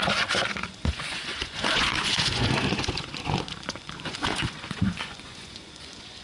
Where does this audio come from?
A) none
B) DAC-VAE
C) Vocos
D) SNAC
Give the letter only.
C